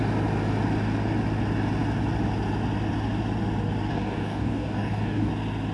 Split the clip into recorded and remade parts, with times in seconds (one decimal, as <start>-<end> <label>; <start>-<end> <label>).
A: 0.0-3.9 recorded; 3.9-5.3 remade; 5.3-5.7 recorded